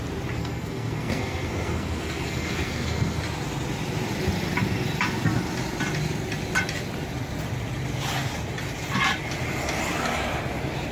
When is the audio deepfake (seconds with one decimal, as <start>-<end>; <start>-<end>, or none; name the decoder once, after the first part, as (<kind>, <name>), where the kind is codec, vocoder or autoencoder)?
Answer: 0.4-3.2 (codec, SNAC)